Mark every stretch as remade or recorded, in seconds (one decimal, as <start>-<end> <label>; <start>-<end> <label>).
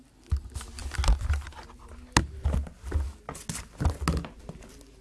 0.0-5.0 recorded